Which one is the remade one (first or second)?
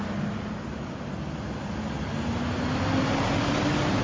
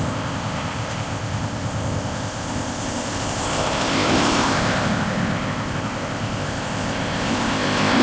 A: second